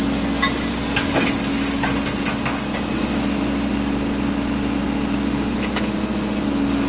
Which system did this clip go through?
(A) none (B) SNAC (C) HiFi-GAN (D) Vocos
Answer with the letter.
A